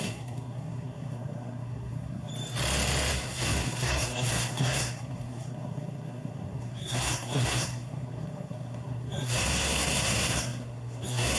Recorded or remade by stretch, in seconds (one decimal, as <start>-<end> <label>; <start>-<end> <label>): 0.0-2.3 remade; 2.3-3.1 recorded; 3.1-11.4 remade